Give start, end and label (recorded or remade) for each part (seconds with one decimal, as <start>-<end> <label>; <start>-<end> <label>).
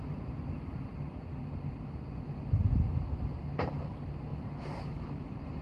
0.0-5.6 remade